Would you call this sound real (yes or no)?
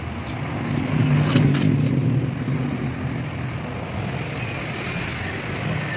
yes